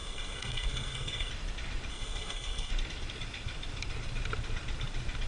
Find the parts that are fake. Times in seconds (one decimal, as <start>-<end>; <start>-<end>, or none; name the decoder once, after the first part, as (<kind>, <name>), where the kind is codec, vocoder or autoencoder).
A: 0.0-1.3 (codec, SNAC); 1.9-2.7